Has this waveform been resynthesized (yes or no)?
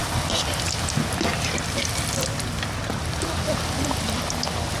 no